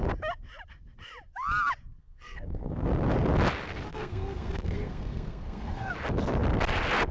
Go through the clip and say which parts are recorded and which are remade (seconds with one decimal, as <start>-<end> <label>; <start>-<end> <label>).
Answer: 0.0-2.0 recorded; 2.0-2.9 remade; 2.9-3.9 recorded; 3.9-5.9 remade; 5.9-7.1 recorded